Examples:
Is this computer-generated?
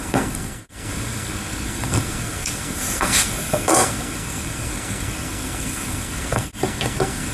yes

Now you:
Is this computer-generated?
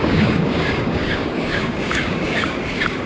yes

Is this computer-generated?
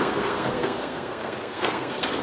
yes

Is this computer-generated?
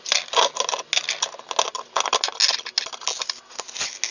no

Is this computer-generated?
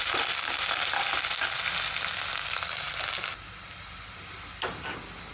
no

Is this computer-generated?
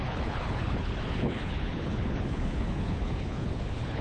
yes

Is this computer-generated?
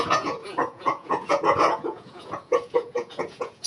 yes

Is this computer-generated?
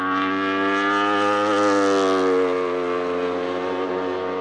no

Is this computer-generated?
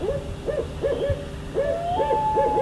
no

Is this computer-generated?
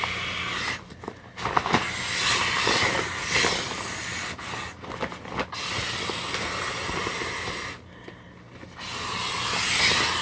no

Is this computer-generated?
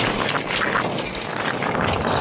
no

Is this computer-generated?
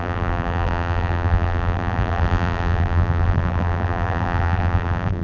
yes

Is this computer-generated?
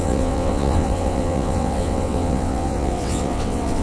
yes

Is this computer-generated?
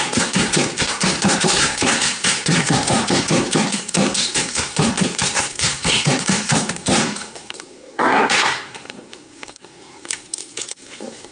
yes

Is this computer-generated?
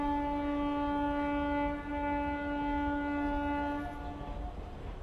no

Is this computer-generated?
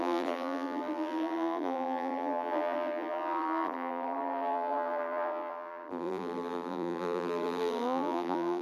yes